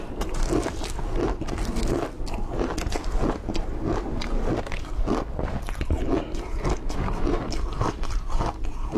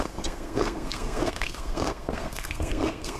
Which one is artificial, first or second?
second